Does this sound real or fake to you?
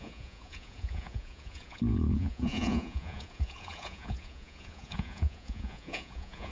fake